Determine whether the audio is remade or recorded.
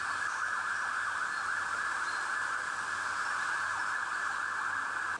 recorded